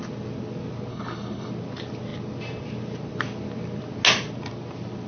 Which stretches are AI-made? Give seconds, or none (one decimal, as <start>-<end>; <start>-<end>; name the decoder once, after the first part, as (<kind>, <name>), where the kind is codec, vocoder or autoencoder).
0.9-1.5 (codec, HILCodec)